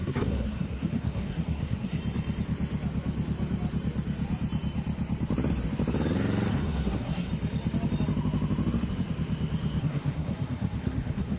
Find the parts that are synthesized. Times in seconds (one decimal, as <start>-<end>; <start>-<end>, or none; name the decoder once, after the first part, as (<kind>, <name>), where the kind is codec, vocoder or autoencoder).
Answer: 0.0-2.0 (codec, SNAC); 6.5-7.3; 9.8-11.4